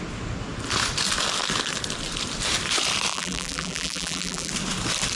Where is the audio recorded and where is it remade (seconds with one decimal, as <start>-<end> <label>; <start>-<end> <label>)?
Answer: 0.0-3.1 recorded; 3.1-4.5 remade; 4.5-5.2 recorded